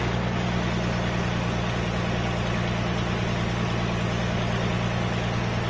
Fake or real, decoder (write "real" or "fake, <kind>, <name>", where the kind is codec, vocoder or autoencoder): real